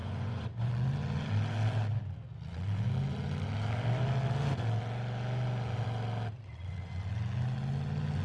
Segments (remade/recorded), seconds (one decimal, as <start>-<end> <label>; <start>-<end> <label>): 0.0-0.7 remade; 0.7-8.2 recorded